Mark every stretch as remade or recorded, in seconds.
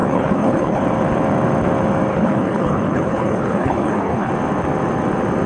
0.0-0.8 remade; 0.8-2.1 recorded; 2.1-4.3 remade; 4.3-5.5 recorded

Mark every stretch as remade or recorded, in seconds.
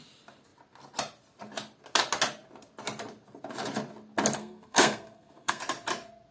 0.0-4.4 recorded; 4.4-5.6 remade; 5.6-6.3 recorded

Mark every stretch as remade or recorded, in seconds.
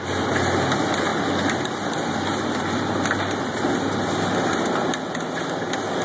0.0-6.0 recorded